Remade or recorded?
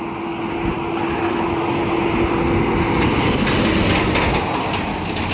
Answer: recorded